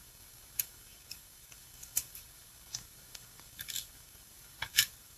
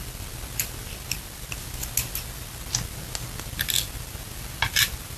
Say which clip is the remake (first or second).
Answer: first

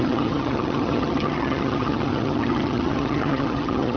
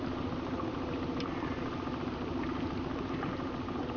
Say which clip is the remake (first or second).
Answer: first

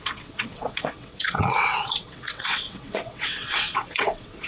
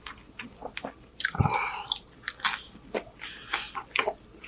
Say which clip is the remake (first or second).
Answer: first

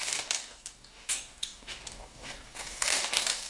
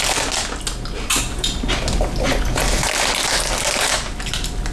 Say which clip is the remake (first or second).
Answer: first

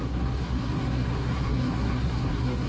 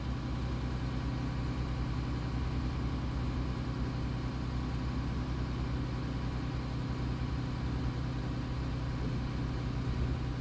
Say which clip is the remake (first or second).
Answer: first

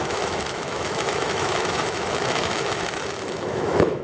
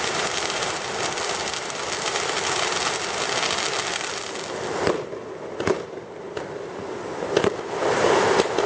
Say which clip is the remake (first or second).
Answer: first